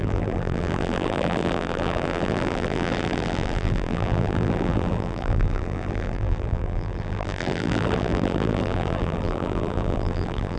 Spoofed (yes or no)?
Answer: yes